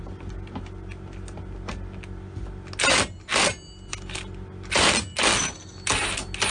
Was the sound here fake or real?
real